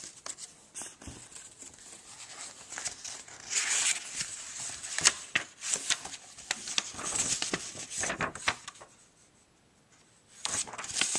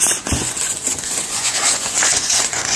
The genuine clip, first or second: first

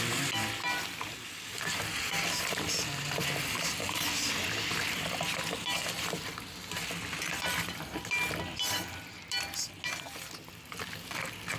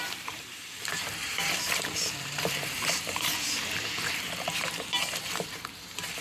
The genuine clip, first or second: first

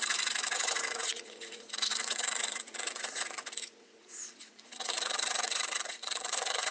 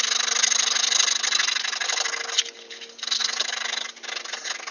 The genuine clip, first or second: second